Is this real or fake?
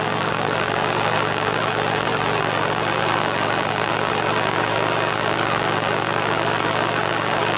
fake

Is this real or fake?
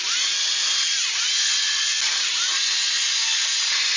real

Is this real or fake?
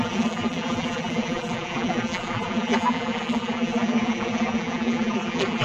fake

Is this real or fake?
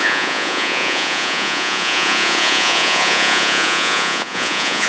fake